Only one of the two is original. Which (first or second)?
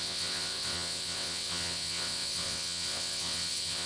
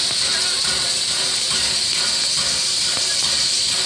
second